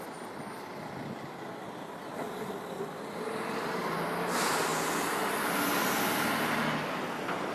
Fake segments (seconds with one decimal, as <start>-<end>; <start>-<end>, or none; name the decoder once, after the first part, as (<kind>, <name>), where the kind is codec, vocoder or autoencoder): none